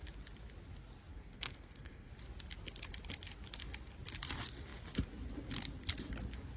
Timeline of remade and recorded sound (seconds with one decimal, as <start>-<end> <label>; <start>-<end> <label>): 0.0-1.1 recorded; 1.1-2.1 remade; 2.1-6.6 recorded